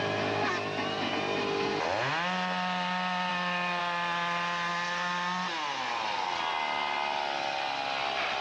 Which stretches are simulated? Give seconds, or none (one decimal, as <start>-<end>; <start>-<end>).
none